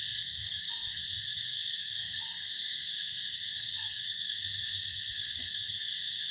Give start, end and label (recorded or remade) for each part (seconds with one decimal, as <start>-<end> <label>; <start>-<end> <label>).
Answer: 0.0-6.3 remade